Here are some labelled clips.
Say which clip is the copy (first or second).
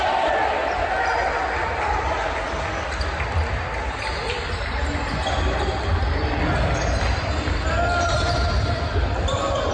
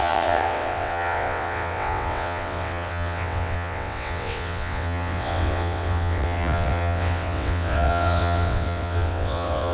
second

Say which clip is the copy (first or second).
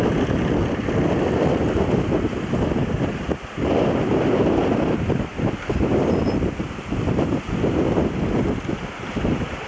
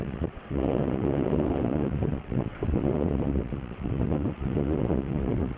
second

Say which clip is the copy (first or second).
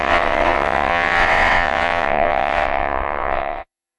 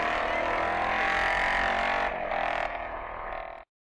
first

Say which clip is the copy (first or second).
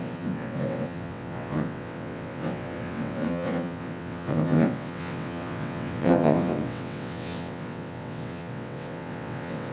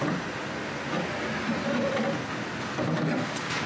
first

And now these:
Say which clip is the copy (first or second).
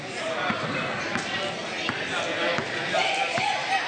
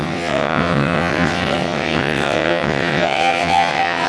second